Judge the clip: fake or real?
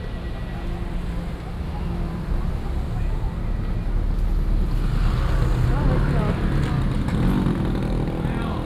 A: real